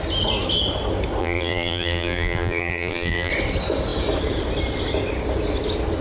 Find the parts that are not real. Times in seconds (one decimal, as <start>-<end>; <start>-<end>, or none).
1.2-3.3